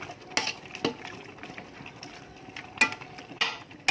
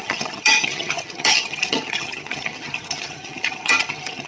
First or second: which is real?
first